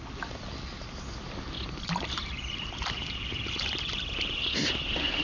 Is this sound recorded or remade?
recorded